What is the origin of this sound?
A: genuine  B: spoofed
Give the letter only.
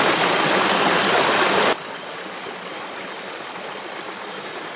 A